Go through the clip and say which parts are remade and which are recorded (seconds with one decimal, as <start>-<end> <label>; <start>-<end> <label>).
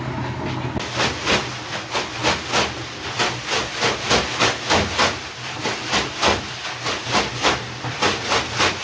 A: 0.0-8.8 recorded